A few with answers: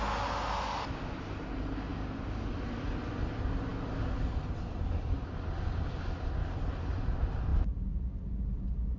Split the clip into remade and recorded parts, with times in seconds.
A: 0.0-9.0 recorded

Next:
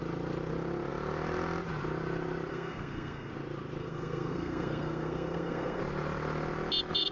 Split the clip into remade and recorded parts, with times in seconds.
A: 0.0-2.5 recorded; 2.5-3.3 remade; 3.3-3.8 recorded; 3.8-5.8 remade; 5.8-7.1 recorded